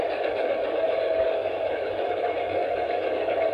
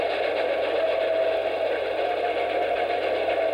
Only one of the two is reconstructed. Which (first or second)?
first